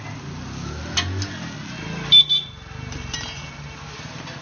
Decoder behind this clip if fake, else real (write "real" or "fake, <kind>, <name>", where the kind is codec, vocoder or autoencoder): real